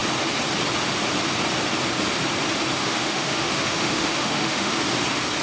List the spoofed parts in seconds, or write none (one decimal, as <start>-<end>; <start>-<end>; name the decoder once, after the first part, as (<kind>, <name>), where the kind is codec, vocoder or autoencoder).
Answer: 2.8-4.8 (autoencoder, DAC-VAE)